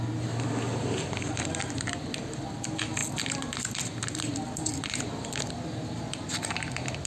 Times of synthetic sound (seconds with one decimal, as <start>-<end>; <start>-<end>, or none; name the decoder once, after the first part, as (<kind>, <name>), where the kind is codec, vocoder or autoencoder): 0.7-1.4 (vocoder, BigVGAN v2)